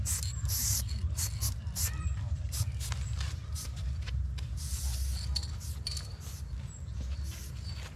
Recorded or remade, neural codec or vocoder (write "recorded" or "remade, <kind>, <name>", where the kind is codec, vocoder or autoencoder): recorded